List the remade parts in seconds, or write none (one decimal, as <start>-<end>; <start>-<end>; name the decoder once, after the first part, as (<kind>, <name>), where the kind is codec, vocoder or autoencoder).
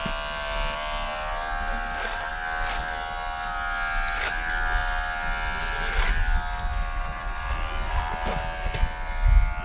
none